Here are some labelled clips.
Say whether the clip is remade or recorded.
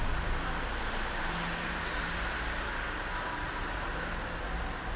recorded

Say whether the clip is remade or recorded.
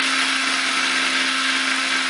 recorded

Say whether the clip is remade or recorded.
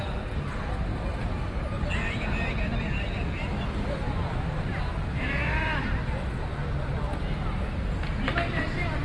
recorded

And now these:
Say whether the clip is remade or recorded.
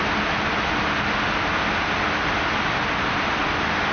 recorded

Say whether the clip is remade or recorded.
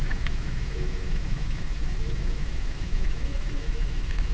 remade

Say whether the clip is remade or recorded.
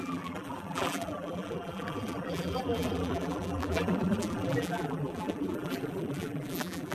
remade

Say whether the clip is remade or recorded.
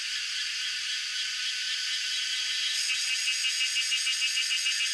remade